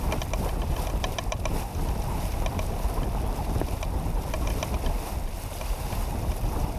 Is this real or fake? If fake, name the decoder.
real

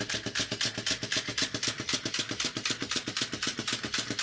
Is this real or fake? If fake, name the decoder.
real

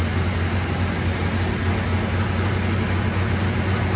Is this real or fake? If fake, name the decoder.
real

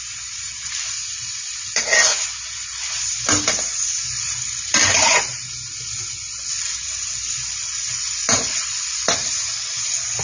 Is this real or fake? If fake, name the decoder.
real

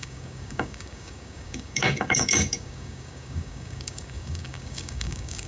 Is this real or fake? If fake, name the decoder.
fake, codec, DAC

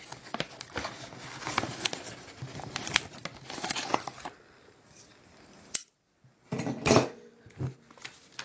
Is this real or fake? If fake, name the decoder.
real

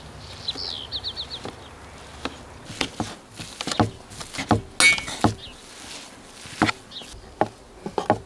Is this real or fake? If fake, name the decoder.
real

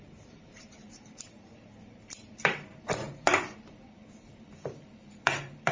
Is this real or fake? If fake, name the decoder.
fake, vocoder, BigVGAN v2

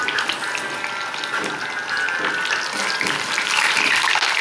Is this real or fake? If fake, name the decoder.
real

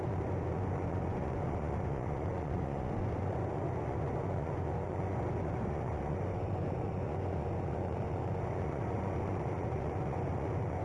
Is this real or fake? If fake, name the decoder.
fake, vocoder, Vocos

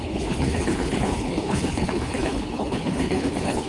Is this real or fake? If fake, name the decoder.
fake, codec, HILCodec